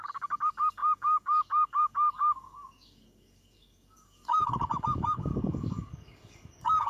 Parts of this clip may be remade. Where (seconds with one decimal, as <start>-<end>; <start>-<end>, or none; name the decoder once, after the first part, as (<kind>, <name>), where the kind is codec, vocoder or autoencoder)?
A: 0.0-6.9 (codec, DAC)